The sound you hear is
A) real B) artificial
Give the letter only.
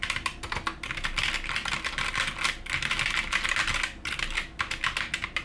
A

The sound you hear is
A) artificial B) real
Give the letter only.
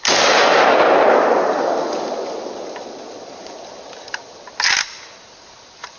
B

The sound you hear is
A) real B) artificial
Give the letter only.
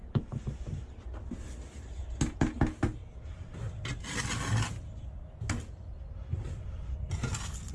A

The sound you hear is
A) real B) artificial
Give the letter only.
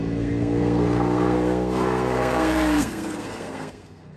B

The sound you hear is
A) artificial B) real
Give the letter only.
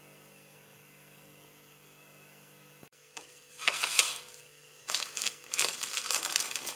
A